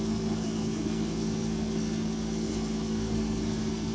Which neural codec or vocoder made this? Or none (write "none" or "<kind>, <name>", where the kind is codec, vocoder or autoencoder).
codec, SNAC